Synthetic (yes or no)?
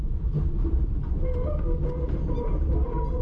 yes